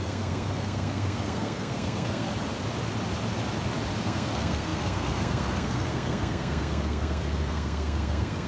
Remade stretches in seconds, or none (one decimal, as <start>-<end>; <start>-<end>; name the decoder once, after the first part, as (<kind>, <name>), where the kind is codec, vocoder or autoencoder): 0.0-2.3 (codec, SNAC); 4.0-8.5